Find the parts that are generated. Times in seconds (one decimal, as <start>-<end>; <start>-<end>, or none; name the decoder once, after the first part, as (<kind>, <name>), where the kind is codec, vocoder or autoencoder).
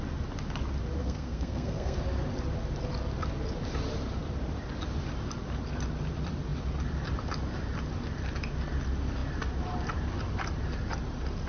1.0-2.0 (codec, SNAC)